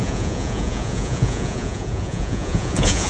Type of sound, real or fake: fake